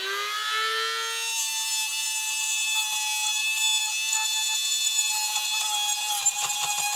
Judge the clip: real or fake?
real